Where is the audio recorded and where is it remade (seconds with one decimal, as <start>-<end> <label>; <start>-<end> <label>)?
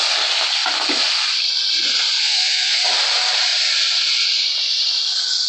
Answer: 0.0-2.2 recorded; 2.2-2.8 remade; 2.8-5.5 recorded